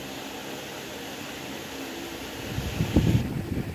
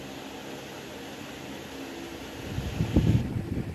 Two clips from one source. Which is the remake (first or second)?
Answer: first